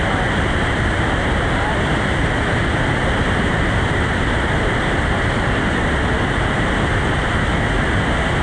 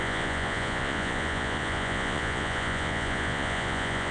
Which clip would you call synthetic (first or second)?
second